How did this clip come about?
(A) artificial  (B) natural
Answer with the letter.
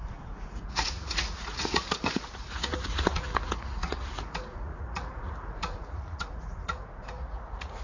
A